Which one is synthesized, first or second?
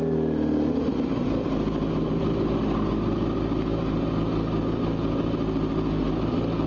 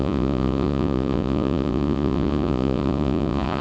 second